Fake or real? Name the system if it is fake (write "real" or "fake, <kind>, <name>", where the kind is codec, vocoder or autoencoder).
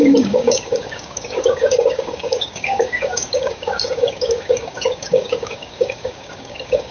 fake, codec, DAC